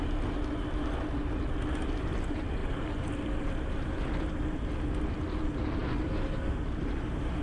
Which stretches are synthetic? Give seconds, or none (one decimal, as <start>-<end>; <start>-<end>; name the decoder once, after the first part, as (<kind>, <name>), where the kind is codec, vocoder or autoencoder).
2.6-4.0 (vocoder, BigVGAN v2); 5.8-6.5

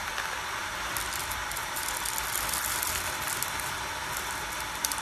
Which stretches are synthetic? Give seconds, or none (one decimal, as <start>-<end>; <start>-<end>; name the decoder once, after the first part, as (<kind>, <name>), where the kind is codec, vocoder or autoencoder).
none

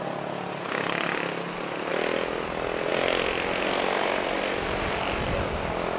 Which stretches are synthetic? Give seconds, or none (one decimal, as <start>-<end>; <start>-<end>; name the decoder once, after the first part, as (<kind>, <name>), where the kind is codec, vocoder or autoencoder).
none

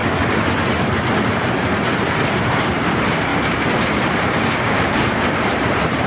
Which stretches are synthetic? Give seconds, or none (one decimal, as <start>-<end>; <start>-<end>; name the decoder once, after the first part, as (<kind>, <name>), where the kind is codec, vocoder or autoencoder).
1.5-3.3 (vocoder, BigVGAN v2); 3.9-6.1

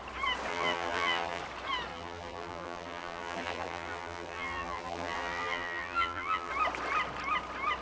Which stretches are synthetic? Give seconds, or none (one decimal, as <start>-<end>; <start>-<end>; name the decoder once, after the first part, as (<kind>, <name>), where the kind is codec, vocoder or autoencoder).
0.5-1.4 (vocoder, BigVGAN v2); 1.9-6.5

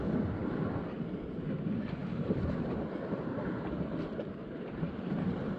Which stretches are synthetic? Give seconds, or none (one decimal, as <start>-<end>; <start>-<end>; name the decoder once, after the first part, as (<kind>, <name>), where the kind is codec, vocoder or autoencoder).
2.0-5.6 (vocoder, BigVGAN v2)

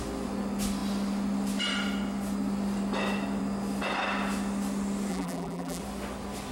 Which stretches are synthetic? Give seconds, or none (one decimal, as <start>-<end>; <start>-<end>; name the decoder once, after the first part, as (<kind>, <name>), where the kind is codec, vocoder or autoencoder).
5.1-5.8 (vocoder, BigVGAN v2)